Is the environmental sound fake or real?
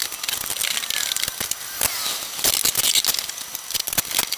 real